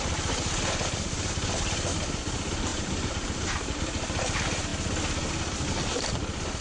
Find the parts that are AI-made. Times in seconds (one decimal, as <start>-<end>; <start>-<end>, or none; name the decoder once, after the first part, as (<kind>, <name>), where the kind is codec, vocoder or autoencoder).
2.7-3.8 (vocoder, BigVGAN v2)